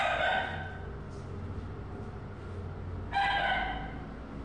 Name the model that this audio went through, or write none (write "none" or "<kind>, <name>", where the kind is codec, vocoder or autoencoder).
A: none